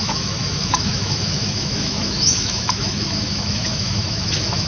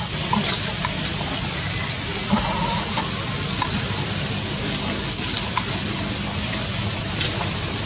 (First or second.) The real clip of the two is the second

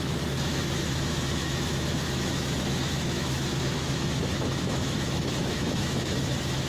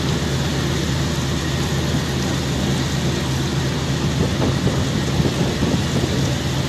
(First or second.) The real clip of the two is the second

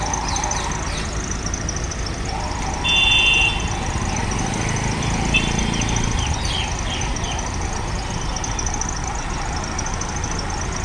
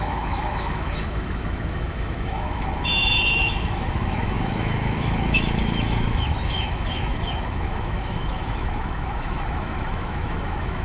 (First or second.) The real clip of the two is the first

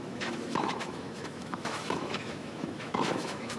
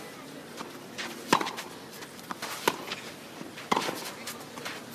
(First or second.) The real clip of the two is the second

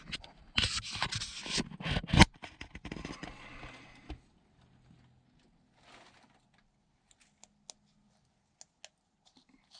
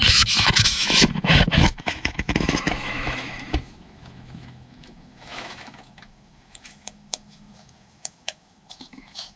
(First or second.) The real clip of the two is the first